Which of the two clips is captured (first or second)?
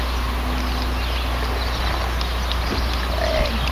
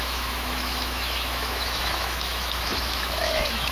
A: first